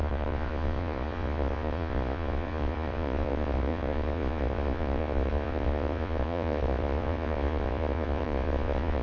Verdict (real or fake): fake